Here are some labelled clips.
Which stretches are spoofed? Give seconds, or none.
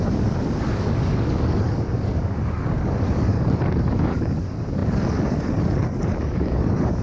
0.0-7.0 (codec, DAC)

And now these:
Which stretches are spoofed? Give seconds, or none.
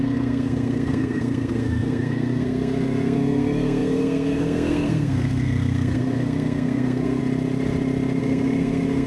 0.0-7.2 (codec, SNAC); 8.2-9.1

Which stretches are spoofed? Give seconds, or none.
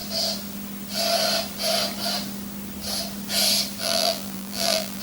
3.8-5.0 (vocoder, BigVGAN v2)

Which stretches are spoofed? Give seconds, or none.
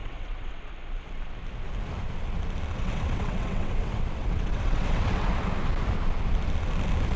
0.0-0.6 (vocoder, WaveNeXt); 2.8-5.3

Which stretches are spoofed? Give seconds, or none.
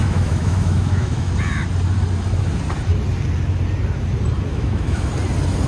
0.0-1.3 (autoencoder, DAC-VAE); 4.5-5.1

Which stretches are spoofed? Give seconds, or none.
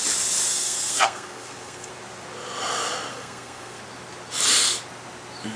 0.5-1.9 (codec, SNAC); 3.1-3.8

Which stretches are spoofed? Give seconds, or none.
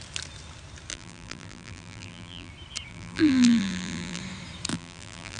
0.9-2.5 (vocoder, BigVGAN v2); 2.9-4.2; 4.7-5.4